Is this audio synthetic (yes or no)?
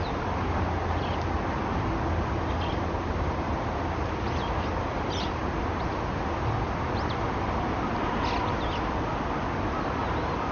no